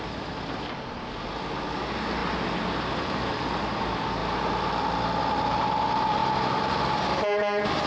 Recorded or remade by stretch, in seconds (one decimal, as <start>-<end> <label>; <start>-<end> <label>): 0.0-7.9 recorded